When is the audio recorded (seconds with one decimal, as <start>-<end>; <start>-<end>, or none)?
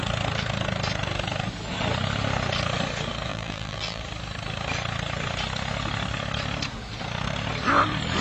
0.0-3.3; 4.0-8.2